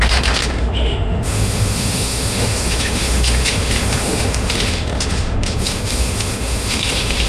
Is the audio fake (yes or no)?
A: yes